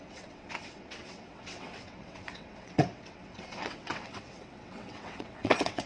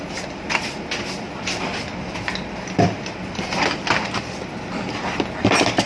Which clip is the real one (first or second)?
second